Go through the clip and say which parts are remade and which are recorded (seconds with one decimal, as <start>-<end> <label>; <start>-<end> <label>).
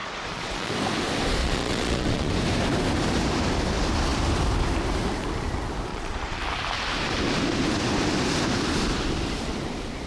0.0-0.7 remade; 0.7-1.4 recorded; 1.4-2.3 remade; 2.3-5.9 recorded; 5.9-6.4 remade; 6.4-10.1 recorded